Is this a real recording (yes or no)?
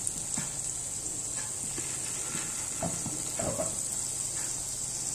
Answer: yes